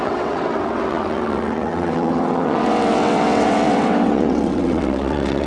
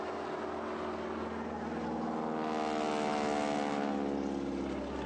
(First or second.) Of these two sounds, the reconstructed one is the first